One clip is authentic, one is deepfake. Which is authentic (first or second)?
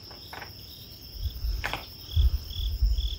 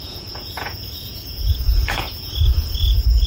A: first